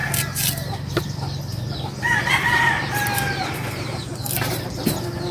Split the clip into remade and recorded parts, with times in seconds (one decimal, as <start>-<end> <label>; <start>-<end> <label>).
0.0-1.0 recorded; 1.0-4.1 remade; 4.1-5.3 recorded